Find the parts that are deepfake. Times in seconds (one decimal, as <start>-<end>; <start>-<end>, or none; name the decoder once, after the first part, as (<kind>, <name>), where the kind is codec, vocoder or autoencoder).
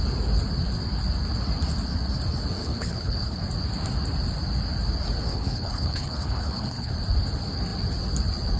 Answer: 2.6-3.4 (codec, HILCodec); 5.3-6.9